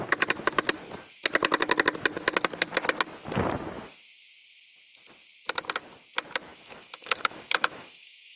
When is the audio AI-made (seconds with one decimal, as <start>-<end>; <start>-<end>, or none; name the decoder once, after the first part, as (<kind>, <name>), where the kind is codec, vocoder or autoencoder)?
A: 6.5-8.4 (autoencoder, DAC-VAE)